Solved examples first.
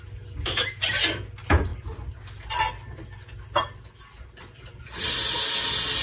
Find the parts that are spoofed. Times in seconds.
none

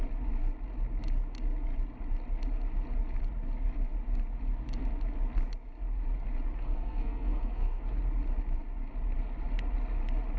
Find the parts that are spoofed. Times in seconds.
6.6-7.8 (codec, SNAC)

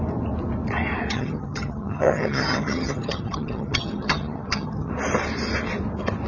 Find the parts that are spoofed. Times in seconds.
1.1-4.9 (vocoder, HiFi-GAN)

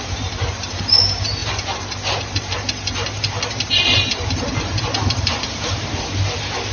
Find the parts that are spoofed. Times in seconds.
0.0-6.7 (vocoder, BigVGAN v2)